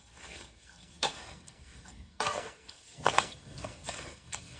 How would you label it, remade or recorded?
remade